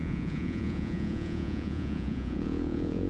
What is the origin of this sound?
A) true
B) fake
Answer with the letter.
B